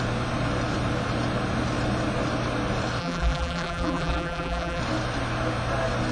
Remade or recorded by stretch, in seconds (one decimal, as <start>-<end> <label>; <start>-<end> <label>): 0.0-3.0 recorded; 3.0-4.8 remade; 4.8-6.1 recorded